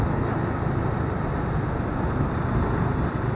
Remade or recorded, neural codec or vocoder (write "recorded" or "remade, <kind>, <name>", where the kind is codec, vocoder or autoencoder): recorded